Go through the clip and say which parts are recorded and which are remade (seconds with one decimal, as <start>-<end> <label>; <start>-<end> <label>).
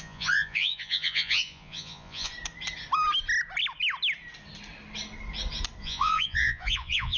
0.0-2.3 remade; 2.3-5.8 recorded; 5.8-7.2 remade